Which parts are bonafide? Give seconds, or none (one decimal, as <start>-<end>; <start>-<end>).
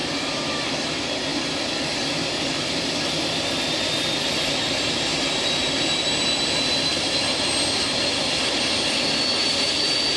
0.7-1.3; 3.0-10.2